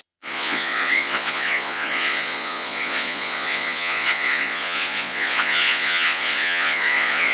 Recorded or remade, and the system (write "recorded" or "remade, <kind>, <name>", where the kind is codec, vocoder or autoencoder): remade, vocoder, Vocos